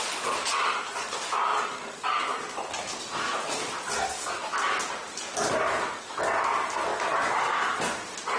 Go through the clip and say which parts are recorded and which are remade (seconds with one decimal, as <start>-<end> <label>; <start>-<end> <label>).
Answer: 0.0-8.4 recorded